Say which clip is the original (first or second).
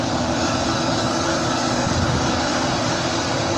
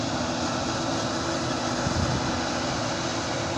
second